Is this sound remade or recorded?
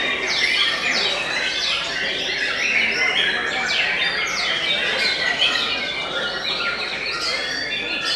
recorded